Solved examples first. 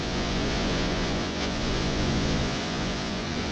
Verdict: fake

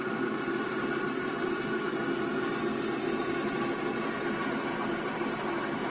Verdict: real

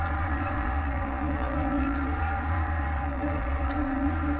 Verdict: fake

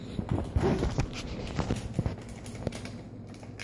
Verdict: real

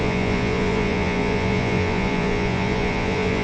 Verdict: fake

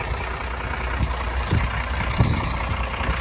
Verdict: real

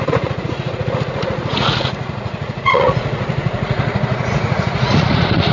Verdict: fake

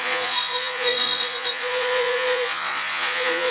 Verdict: fake